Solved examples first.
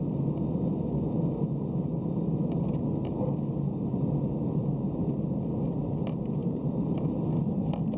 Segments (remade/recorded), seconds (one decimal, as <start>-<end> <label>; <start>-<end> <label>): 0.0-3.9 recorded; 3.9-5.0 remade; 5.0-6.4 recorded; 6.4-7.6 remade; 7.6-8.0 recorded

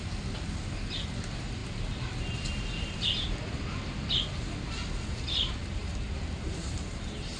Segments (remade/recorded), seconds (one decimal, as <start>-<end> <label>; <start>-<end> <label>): 0.0-7.4 recorded

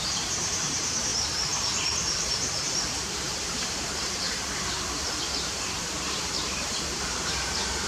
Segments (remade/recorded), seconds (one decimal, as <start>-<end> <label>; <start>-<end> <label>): 0.0-7.9 remade

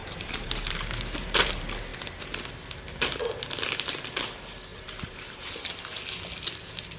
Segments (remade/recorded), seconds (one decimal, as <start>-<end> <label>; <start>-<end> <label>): 0.0-1.0 remade; 1.0-4.7 recorded; 4.7-5.7 remade; 5.7-7.0 recorded

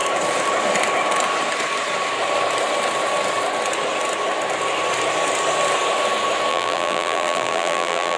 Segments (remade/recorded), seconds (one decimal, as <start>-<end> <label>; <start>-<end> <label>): 0.0-6.5 recorded; 6.5-8.2 remade

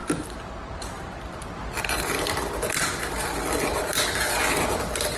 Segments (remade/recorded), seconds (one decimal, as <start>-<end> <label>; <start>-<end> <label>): 0.0-5.2 remade